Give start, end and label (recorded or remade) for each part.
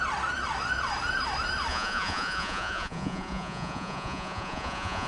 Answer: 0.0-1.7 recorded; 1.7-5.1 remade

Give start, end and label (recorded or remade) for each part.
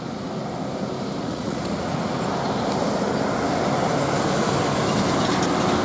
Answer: 0.0-1.2 recorded; 1.2-2.1 remade; 2.1-5.8 recorded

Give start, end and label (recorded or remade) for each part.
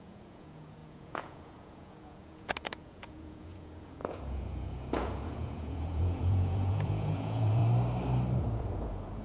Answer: 0.0-7.6 remade; 7.6-8.4 recorded; 8.4-9.2 remade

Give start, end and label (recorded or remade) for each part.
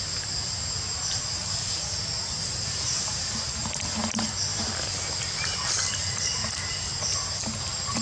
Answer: 0.0-8.0 recorded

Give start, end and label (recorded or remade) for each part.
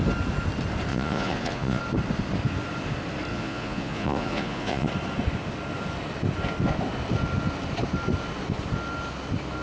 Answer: 0.0-0.9 recorded; 0.9-1.8 remade; 1.8-3.3 recorded; 3.3-4.9 remade; 4.9-9.6 recorded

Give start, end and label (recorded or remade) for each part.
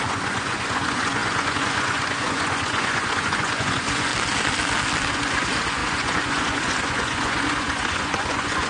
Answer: 0.0-4.1 remade; 4.1-5.1 recorded; 5.1-8.7 remade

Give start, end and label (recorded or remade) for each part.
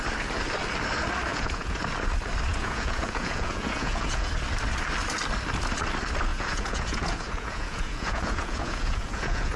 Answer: 0.0-1.3 recorded; 1.3-1.8 remade; 1.8-2.5 recorded; 2.5-4.3 remade; 4.3-6.3 recorded; 6.3-9.6 remade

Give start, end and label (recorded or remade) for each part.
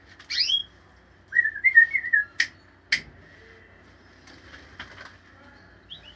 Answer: 0.0-6.2 recorded